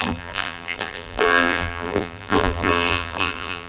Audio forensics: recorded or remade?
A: remade